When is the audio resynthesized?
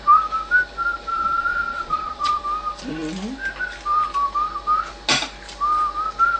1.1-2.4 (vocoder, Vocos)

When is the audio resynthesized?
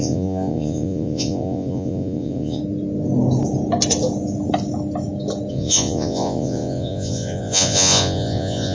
0.0-2.6 (vocoder, Vocos); 5.5-8.7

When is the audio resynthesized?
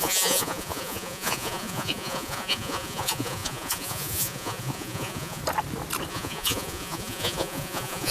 0.0-5.4 (vocoder, Vocos); 6.1-8.1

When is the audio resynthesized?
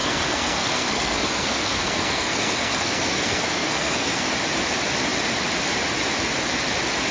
0.0-4.3 (codec, SNAC)